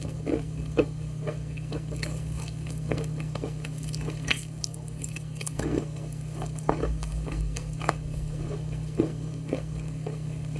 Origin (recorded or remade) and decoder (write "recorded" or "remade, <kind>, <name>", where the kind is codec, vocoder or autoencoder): remade, codec, SNAC